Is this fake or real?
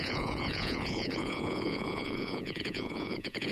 fake